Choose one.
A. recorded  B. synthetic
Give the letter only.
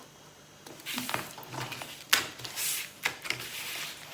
A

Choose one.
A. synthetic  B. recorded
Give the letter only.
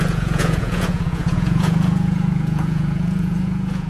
A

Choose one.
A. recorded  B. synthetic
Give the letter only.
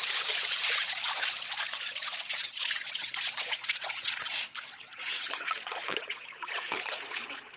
B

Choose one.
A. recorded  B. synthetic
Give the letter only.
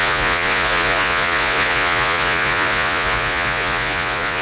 B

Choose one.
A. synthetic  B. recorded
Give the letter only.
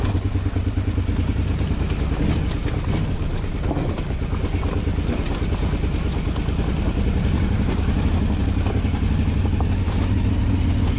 B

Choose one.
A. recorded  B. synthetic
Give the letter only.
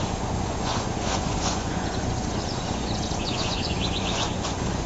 B